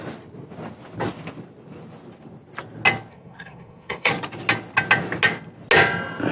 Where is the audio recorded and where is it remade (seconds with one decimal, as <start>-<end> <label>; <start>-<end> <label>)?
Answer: 0.0-3.1 recorded; 3.1-4.1 remade; 4.1-6.3 recorded